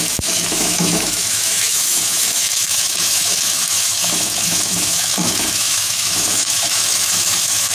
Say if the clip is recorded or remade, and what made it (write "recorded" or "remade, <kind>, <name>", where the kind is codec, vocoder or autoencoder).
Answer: remade, autoencoder, DAC-VAE